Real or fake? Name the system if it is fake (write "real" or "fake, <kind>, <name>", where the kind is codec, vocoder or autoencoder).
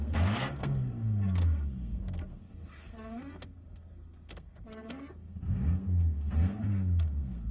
fake, codec, SNAC